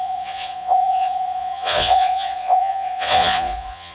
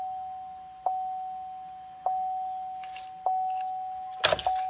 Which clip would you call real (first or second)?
second